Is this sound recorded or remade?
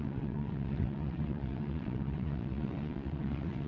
remade